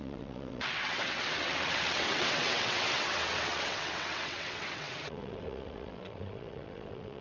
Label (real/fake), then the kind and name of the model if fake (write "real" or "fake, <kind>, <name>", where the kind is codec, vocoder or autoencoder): fake, vocoder, WaveNeXt